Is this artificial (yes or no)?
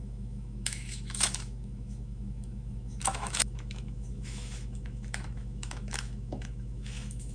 yes